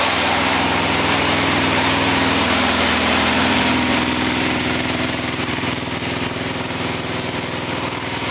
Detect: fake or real fake